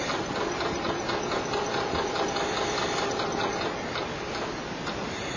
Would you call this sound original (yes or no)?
yes